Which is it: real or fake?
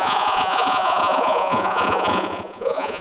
fake